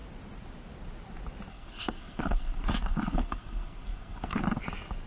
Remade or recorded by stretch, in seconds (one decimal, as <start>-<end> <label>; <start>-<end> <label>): 0.0-1.5 recorded; 1.5-4.4 remade; 4.4-5.1 recorded